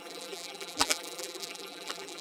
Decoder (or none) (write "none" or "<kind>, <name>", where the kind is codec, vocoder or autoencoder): vocoder, BigVGAN v2